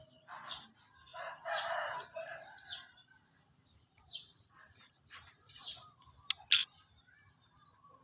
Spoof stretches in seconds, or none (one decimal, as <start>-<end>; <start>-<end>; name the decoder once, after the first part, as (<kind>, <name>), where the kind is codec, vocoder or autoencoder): 1.1-5.9 (vocoder, BigVGAN v2); 6.6-7.3